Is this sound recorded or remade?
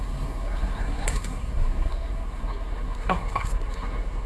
remade